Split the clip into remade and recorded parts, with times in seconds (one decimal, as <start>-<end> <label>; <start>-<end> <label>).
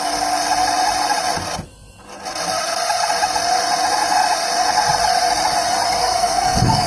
0.0-6.0 recorded; 6.0-6.9 remade